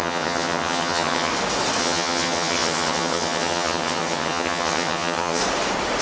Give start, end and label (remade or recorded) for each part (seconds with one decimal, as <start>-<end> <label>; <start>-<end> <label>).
0.0-1.3 remade; 1.3-1.8 recorded; 1.8-5.4 remade; 5.4-6.0 recorded